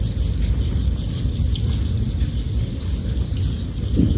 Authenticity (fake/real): real